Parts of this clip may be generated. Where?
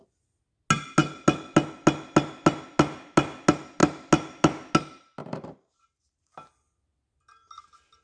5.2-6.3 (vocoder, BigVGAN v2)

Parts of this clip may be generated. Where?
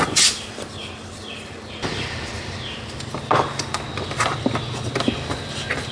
0.8-3.9 (vocoder, BigVGAN v2)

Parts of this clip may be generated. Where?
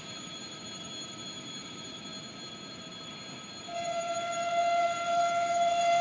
0.0-2.1 (vocoder, BigVGAN v2); 2.7-3.1; 3.8-6.0